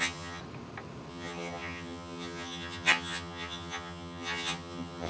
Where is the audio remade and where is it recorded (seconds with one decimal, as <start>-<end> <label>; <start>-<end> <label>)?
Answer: 0.0-0.4 remade; 0.4-1.1 recorded; 1.1-5.1 remade